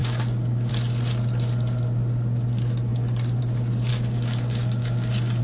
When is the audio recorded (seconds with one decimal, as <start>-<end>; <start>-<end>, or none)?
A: 0.7-3.9